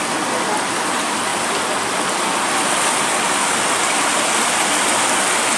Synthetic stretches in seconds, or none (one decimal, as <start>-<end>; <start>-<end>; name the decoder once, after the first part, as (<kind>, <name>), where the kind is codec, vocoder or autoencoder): none